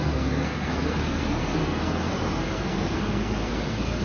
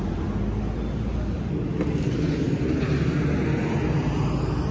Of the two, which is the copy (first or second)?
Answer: first